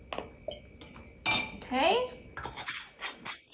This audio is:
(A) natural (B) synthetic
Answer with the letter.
A